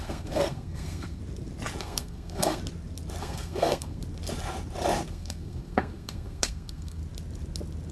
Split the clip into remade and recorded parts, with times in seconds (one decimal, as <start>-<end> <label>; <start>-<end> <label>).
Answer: 0.0-1.2 remade; 1.2-1.8 recorded; 1.8-2.6 remade; 2.6-3.2 recorded; 3.2-4.0 remade; 4.0-5.1 recorded; 5.1-7.0 remade; 7.0-7.9 recorded